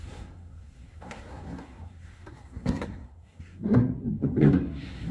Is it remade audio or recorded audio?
remade